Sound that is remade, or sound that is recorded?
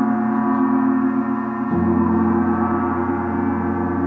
recorded